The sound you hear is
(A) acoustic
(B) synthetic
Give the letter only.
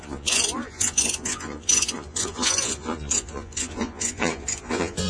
B